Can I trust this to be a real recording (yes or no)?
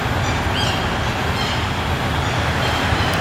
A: yes